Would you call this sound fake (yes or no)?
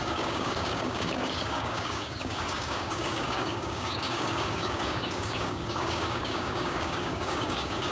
yes